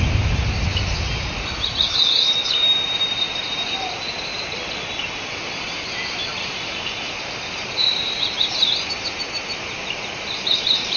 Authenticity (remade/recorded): recorded